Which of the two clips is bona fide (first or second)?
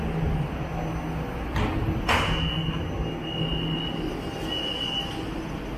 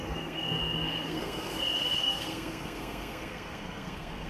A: first